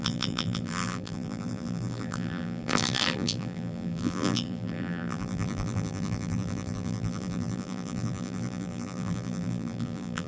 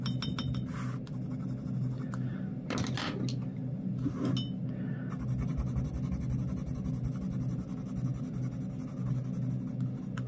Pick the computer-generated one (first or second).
first